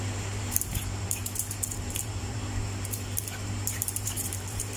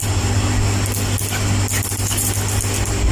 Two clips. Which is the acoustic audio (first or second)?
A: second